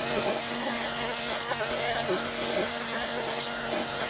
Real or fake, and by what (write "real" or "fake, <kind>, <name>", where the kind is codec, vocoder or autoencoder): fake, codec, SNAC